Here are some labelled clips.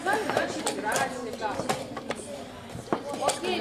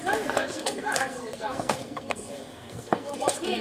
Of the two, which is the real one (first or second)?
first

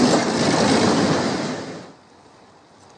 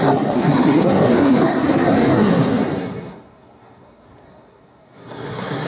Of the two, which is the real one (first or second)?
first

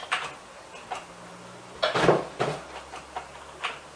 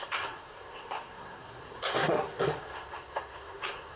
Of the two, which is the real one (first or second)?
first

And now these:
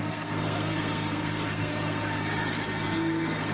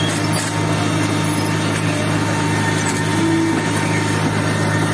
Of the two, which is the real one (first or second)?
second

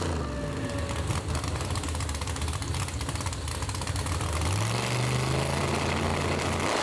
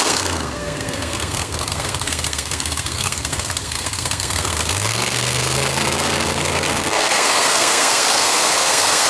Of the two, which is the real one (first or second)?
first